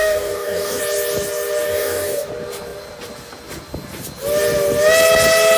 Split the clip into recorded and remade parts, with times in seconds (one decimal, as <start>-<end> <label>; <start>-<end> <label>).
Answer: 0.0-0.8 remade; 0.8-1.7 recorded; 1.7-2.3 remade; 2.3-5.6 recorded